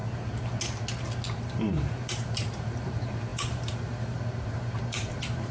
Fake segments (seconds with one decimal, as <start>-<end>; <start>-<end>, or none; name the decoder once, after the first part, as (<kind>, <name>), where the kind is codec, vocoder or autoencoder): 1.4-5.5 (vocoder, BigVGAN v2)

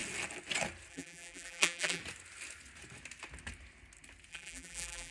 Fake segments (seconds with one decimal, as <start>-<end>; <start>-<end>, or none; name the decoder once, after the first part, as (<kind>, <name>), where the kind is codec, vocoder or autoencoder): 0.9-2.0 (vocoder, BigVGAN v2); 4.3-5.1